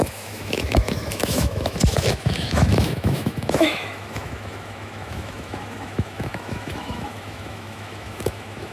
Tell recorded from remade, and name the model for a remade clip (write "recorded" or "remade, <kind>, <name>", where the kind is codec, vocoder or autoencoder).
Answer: remade, autoencoder, DAC-VAE